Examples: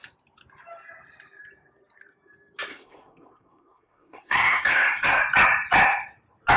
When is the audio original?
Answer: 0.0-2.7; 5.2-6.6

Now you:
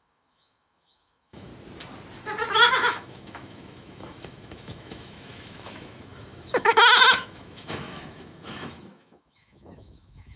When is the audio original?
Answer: 1.5-2.7

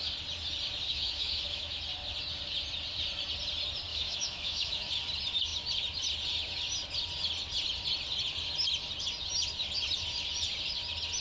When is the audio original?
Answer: 0.0-0.9; 1.8-3.9; 4.9-11.2

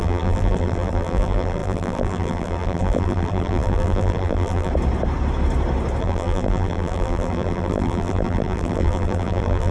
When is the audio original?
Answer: 4.7-6.0

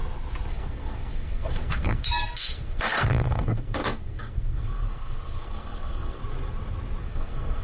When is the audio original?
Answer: 0.0-0.5; 6.2-7.0

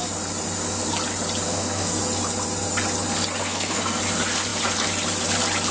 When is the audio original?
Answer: 0.0-1.5; 2.0-3.4; 4.0-5.7

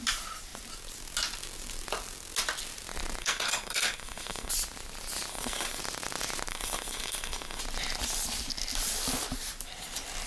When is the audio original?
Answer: 0.0-3.2; 4.5-5.3; 5.8-6.5; 7.6-10.3